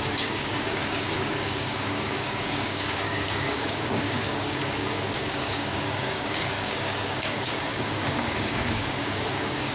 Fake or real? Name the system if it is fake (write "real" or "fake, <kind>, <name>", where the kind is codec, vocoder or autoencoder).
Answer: fake, codec, DAC